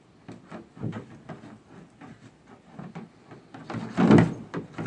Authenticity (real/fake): real